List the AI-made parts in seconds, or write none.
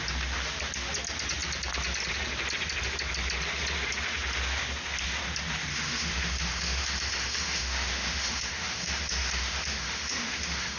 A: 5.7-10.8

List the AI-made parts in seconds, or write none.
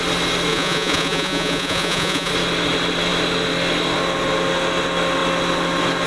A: 0.5-2.3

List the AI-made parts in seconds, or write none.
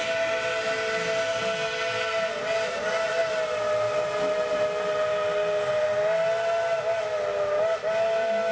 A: none